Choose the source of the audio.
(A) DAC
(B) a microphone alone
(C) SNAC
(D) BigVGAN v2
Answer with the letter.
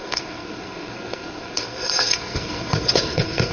C